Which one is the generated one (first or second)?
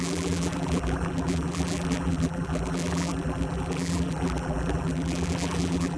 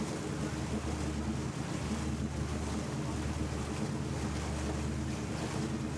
first